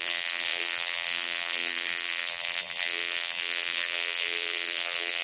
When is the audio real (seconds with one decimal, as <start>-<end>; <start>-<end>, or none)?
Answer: none

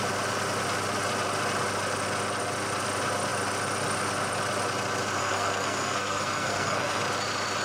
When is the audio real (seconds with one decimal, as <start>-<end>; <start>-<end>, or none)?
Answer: 0.0-5.2; 7.0-7.6

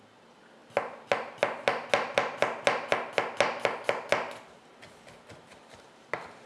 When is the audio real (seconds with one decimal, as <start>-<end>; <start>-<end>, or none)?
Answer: 0.0-6.5

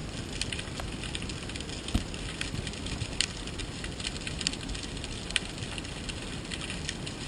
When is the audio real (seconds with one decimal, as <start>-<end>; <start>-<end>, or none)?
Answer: 0.0-7.3

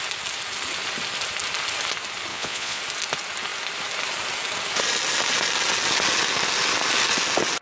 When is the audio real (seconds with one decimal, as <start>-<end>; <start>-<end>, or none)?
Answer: 0.0-2.3; 2.8-7.6

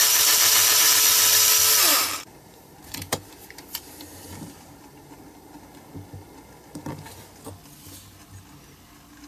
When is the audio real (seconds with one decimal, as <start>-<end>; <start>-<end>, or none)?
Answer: 0.9-1.9; 5.5-9.3

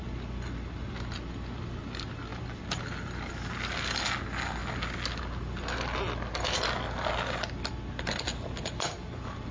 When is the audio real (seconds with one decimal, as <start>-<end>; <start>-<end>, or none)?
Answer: 0.0-9.5